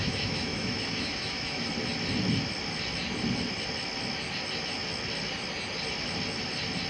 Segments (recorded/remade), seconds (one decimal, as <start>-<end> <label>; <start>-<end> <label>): 0.0-1.7 remade; 1.7-6.9 recorded